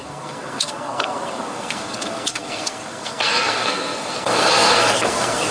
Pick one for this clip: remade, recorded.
remade